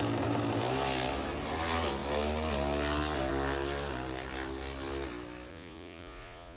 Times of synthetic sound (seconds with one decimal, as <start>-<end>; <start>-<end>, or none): 5.5-6.6